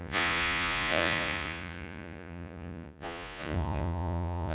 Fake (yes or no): yes